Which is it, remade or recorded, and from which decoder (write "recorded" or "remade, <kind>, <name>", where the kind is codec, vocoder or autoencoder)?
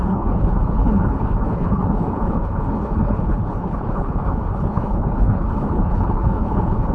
remade, codec, HILCodec